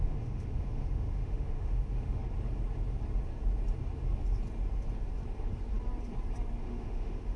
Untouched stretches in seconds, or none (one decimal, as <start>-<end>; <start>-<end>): 2.2-6.6